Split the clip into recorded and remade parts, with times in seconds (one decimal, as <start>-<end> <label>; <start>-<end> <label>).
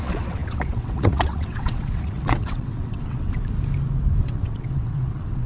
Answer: 0.0-3.4 remade; 3.4-4.2 recorded; 4.2-5.5 remade